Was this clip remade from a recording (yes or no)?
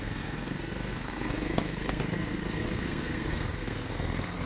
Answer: yes